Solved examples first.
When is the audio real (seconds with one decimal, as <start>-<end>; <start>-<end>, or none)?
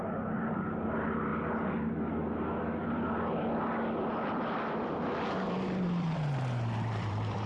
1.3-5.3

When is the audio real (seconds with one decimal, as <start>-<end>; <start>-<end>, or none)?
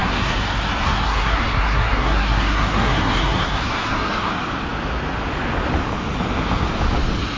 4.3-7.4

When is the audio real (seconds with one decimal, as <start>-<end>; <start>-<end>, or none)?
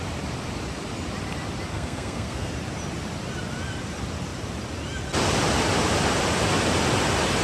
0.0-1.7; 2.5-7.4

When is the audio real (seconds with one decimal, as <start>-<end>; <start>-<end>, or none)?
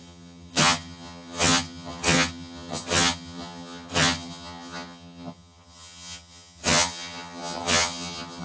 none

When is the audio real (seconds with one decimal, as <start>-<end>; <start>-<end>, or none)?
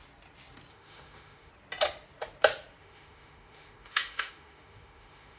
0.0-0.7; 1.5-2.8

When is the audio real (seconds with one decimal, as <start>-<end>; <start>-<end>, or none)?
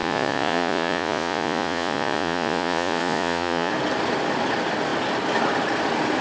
3.7-6.2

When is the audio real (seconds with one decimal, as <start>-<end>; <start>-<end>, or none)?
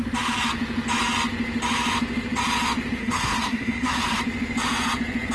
0.0-3.0; 4.2-5.3